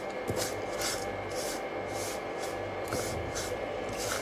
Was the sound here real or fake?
fake